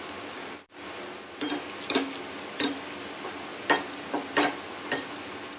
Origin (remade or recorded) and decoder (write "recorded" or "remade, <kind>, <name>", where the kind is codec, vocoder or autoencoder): recorded